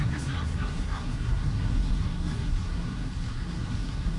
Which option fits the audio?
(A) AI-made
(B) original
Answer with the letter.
A